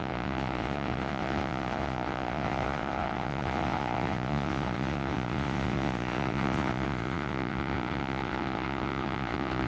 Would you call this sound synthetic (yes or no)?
yes